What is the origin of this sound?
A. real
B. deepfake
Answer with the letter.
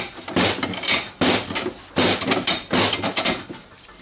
A